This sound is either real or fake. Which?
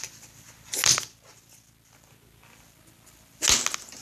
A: real